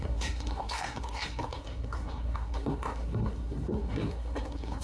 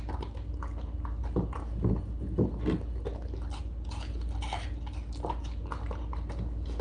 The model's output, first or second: first